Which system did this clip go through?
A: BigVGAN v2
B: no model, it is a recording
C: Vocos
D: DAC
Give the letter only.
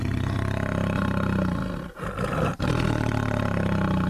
B